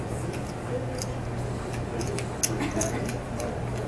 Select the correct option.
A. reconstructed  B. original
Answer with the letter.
B